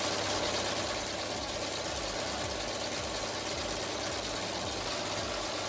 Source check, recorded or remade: recorded